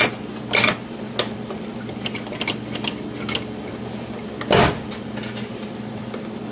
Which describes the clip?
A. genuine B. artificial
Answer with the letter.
A